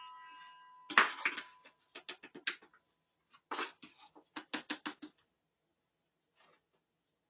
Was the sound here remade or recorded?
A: recorded